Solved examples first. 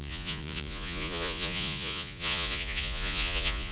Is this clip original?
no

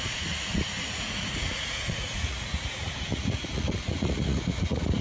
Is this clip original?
no